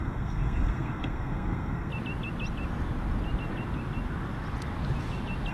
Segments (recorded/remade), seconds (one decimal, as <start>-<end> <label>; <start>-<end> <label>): 0.0-1.9 remade; 1.9-5.5 recorded